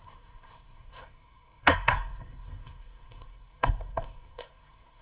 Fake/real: fake